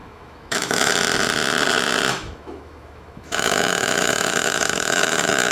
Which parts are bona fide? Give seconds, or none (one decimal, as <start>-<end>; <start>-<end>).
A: 0.9-2.1